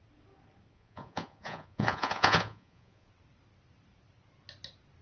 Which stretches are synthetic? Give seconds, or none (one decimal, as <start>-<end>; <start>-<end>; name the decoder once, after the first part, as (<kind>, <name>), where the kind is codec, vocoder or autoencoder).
0.7-3.1 (vocoder, Vocos)